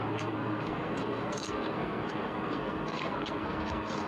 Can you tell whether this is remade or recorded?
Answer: remade